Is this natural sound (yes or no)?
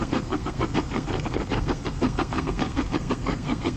no